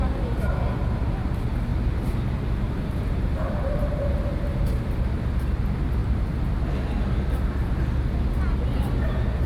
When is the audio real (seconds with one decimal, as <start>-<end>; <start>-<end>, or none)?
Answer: 0.0-1.7; 4.9-6.0; 6.5-9.5